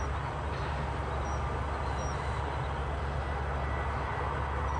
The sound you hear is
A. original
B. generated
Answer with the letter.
A